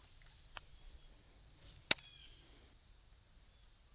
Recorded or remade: recorded